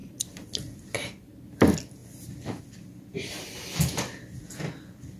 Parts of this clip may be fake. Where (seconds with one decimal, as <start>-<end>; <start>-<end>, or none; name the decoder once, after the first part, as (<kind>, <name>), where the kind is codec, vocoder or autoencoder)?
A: 0.0-0.6 (vocoder, BigVGAN v2)